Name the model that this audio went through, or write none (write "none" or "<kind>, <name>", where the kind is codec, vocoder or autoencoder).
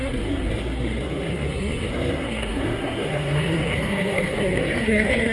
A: codec, SNAC